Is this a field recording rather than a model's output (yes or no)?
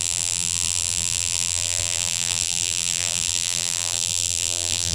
no